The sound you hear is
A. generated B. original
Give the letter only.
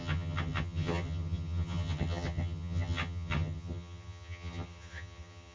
A